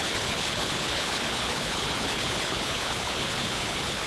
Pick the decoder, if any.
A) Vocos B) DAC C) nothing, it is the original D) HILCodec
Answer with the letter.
D